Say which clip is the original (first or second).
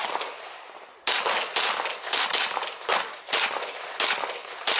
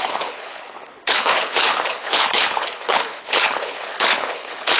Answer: first